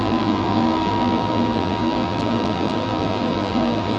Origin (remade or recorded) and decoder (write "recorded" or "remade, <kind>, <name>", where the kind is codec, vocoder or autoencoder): remade, vocoder, BigVGAN v2